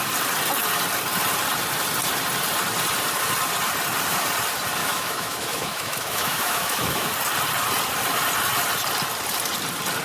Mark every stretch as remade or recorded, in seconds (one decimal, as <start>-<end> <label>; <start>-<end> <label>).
0.0-4.8 recorded; 4.8-7.1 remade; 7.1-10.0 recorded